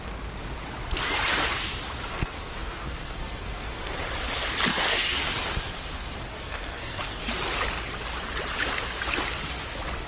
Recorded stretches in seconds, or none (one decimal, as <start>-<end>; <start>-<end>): 0.0-2.1; 3.9-4.7; 5.3-6.3; 7.2-10.1